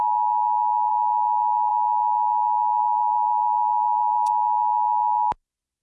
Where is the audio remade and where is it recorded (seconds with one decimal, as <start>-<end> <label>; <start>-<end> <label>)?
0.0-2.8 recorded; 2.8-4.3 remade; 4.3-5.8 recorded